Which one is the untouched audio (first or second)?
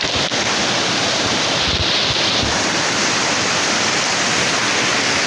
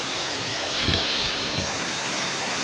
first